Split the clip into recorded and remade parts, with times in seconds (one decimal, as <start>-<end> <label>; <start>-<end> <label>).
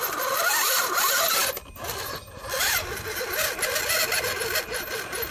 0.0-5.3 recorded